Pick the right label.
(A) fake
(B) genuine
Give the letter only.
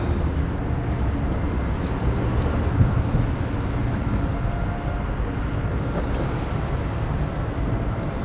B